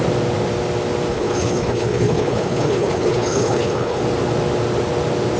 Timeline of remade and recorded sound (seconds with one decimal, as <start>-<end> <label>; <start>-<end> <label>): 0.0-1.1 recorded; 1.1-4.0 remade; 4.0-5.4 recorded